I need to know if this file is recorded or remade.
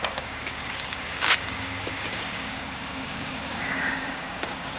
remade